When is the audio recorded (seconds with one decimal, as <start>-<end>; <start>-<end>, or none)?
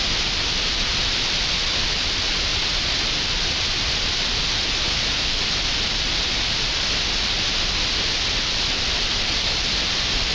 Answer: 0.0-10.3